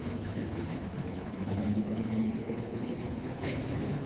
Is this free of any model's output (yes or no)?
no